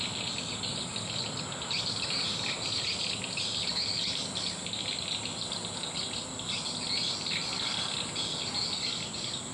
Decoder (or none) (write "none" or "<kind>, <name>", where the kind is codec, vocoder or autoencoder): none